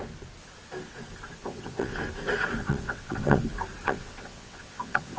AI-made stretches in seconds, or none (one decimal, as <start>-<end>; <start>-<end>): 1.4-2.0; 2.6-3.4; 3.8-5.2